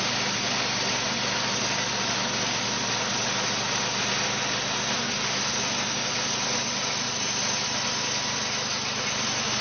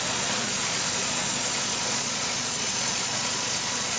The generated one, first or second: second